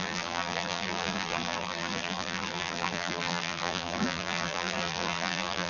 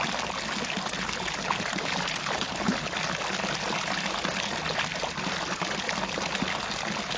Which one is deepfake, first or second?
first